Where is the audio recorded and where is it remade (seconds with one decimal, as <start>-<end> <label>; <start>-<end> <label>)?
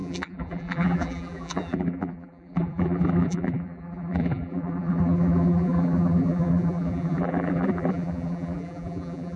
0.0-9.4 remade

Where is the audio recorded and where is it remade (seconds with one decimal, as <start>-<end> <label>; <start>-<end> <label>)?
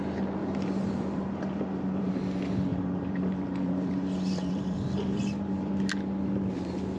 0.0-0.4 recorded; 0.4-2.1 remade; 2.1-2.7 recorded; 2.7-5.9 remade; 5.9-7.0 recorded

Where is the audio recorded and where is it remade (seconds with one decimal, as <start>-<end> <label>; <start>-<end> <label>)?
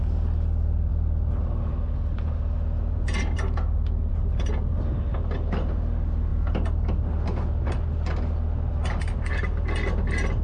0.0-10.4 recorded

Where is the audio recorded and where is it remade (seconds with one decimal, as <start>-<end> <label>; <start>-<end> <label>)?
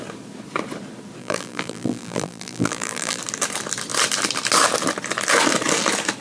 0.0-1.2 recorded; 1.2-3.2 remade; 3.2-6.2 recorded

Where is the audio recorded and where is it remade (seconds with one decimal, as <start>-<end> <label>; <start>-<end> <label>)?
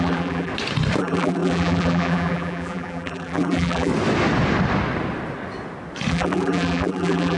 0.0-0.5 remade; 0.5-1.0 recorded; 1.0-3.9 remade; 3.9-6.1 recorded; 6.1-7.4 remade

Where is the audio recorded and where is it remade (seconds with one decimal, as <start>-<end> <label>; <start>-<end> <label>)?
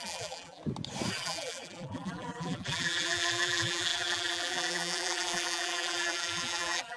0.0-0.6 remade; 0.6-1.1 recorded; 1.1-7.0 remade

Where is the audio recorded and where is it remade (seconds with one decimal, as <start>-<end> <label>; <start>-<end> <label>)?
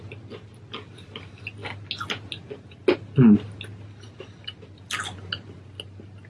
0.0-6.3 recorded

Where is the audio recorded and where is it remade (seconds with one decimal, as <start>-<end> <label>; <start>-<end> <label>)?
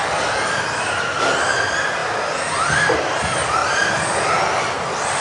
0.0-2.0 recorded; 2.0-3.2 remade; 3.2-3.6 recorded; 3.6-4.6 remade; 4.6-5.2 recorded